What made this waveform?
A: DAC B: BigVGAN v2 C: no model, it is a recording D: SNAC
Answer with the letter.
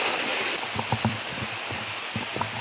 B